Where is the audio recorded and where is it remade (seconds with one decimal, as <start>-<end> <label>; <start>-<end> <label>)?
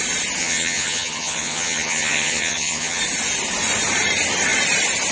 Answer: 0.0-0.4 recorded; 0.4-3.0 remade; 3.0-5.1 recorded